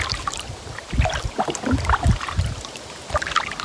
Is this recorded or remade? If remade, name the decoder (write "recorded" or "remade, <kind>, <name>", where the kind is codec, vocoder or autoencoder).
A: recorded